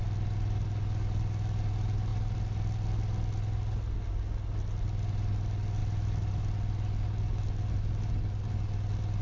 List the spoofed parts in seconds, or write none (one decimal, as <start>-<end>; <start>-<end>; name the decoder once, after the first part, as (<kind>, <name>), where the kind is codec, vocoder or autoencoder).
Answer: none